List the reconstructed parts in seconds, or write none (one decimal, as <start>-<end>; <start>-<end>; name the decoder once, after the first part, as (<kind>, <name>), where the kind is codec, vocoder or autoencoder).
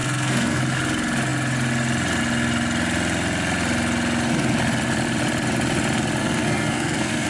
0.0-0.6 (codec, SNAC); 6.2-7.3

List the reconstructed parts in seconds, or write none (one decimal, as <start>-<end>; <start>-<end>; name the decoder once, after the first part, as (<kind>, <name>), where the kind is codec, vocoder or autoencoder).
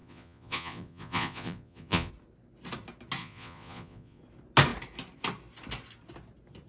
0.0-2.1 (vocoder, Vocos); 3.2-4.2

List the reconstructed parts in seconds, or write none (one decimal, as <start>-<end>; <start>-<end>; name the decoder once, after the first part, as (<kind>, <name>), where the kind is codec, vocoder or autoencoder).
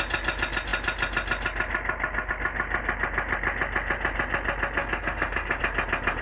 4.8-5.6 (codec, DAC)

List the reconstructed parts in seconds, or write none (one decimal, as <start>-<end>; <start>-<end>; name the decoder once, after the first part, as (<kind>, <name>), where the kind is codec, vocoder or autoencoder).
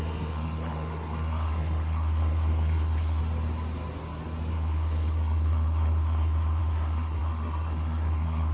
0.0-3.2 (codec, SNAC); 4.5-8.5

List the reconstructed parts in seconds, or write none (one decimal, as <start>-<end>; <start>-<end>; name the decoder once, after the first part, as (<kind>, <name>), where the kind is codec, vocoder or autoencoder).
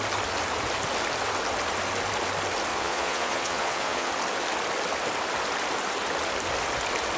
2.7-4.1 (vocoder, Vocos)